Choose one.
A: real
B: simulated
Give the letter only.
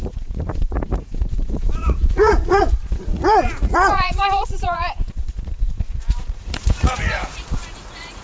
B